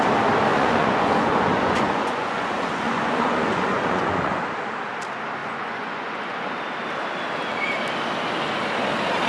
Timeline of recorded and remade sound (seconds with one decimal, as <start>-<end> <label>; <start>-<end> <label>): 0.0-0.5 recorded; 0.5-4.4 remade; 4.4-5.4 recorded; 5.4-6.5 remade; 6.5-9.3 recorded